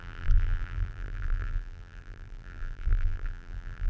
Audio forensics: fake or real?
fake